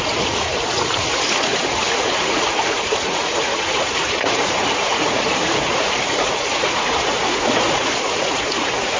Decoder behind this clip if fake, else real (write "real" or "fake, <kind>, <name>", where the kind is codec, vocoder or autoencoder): fake, vocoder, Vocos